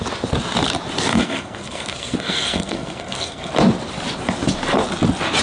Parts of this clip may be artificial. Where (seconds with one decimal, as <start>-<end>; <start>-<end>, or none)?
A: 1.1-3.5